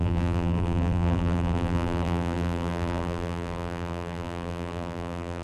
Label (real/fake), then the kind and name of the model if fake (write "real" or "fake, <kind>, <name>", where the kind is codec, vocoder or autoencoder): fake, vocoder, BigVGAN v2